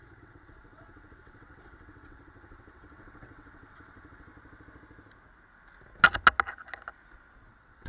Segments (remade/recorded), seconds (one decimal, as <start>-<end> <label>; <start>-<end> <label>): 0.0-4.3 remade; 4.3-7.5 recorded; 7.5-7.9 remade